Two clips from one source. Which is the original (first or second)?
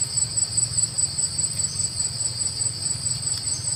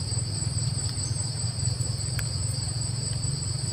first